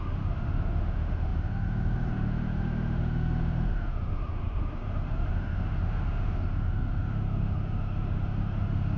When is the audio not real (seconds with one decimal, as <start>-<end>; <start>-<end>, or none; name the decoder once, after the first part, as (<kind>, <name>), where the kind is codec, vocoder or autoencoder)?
0.0-9.0 (autoencoder, DAC-VAE)